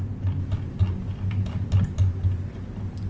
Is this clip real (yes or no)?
yes